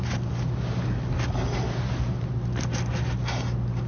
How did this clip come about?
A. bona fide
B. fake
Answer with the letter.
A